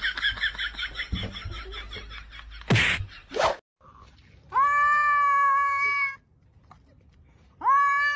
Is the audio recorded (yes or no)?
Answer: yes